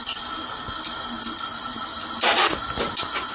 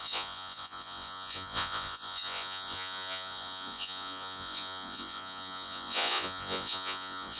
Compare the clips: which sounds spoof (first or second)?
second